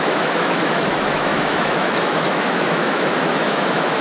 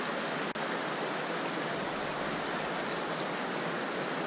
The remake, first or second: first